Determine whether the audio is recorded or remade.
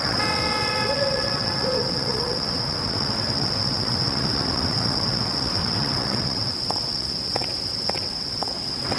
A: remade